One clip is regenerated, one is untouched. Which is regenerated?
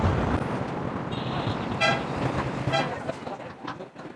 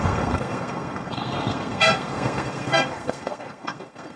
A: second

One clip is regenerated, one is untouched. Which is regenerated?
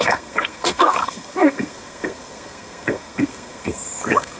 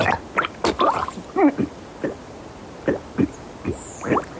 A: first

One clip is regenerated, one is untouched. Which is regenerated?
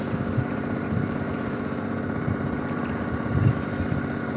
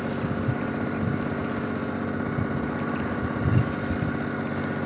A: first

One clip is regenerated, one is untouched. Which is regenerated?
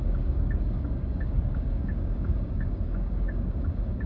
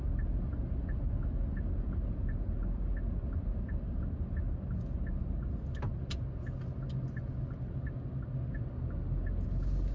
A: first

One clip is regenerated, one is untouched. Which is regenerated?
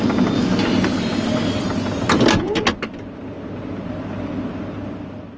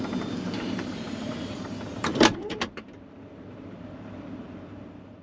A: second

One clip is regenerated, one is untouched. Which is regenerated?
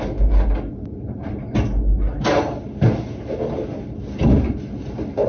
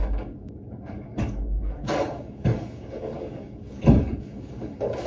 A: second